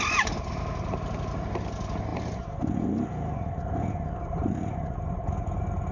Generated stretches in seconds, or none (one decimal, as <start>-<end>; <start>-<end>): none